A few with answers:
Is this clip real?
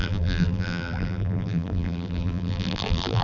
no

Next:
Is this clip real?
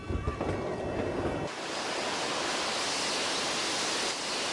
yes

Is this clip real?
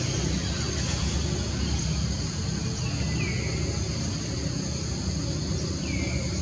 yes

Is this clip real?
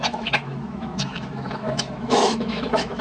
no